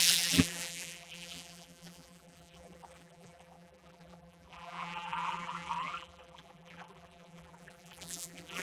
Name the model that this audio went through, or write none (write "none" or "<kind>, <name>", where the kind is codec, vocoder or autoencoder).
vocoder, BigVGAN v2